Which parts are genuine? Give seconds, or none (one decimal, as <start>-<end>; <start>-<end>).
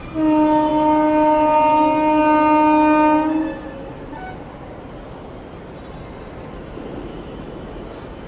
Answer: 0.0-7.1; 7.7-8.3